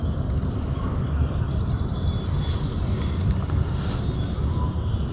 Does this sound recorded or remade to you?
recorded